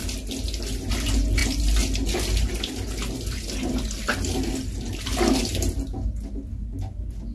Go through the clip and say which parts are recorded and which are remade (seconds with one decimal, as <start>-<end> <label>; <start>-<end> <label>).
0.0-7.3 recorded